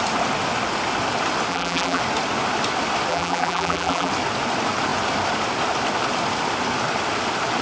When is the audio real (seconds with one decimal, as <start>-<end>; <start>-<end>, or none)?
0.0-1.5; 2.0-3.1; 4.1-7.6